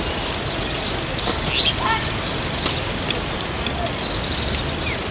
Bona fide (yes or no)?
yes